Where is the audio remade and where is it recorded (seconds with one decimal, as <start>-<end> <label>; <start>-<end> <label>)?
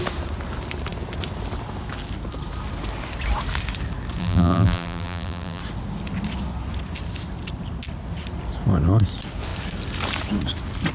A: 0.0-4.2 recorded; 4.2-5.6 remade; 5.6-10.9 recorded